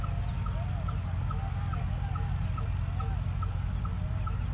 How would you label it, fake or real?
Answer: real